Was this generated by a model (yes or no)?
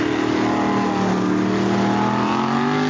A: no